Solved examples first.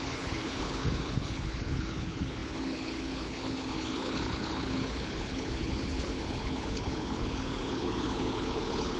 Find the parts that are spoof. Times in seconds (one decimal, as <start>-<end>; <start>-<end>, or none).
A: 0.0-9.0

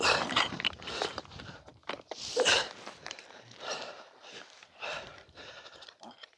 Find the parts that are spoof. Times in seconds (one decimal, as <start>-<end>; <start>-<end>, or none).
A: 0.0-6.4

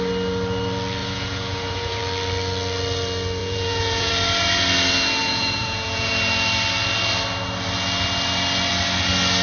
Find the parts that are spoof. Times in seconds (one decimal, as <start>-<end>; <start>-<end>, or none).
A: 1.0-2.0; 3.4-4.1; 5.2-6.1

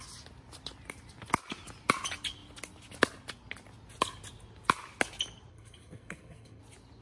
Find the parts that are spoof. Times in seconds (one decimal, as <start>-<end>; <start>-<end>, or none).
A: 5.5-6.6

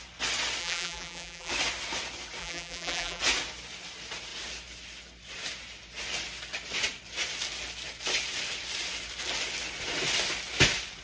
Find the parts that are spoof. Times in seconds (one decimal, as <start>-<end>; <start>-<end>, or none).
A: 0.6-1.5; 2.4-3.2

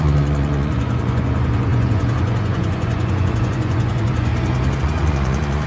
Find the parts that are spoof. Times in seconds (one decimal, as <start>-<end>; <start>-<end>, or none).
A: 0.0-4.3; 4.8-5.7

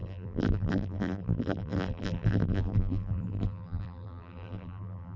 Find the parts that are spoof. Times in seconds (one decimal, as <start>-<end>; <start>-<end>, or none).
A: 0.0-5.2